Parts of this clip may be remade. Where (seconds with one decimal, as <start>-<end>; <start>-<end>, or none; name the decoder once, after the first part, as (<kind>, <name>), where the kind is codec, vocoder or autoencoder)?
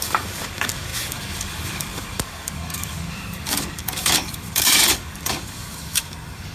0.0-6.5 (codec, DAC)